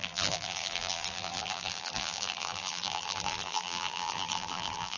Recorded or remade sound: remade